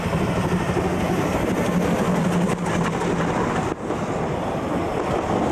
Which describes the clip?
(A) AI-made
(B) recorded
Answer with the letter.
B